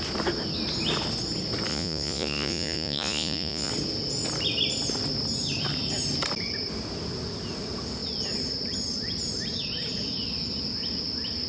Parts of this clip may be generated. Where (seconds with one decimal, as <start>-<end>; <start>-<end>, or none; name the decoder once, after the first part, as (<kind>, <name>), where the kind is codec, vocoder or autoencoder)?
1.7-3.7 (vocoder, Vocos)